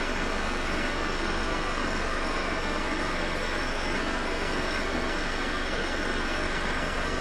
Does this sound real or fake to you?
fake